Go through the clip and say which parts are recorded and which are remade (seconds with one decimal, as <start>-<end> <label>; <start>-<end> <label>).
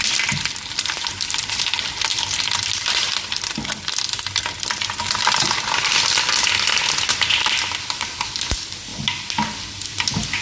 0.0-10.4 recorded